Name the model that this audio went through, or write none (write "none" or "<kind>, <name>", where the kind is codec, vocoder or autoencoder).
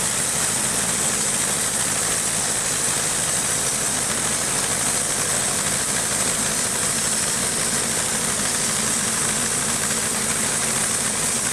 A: none